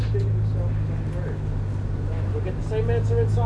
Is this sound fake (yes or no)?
no